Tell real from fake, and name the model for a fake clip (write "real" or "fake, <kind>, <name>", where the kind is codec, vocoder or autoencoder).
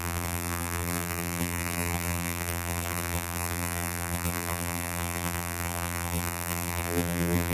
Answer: fake, vocoder, BigVGAN v2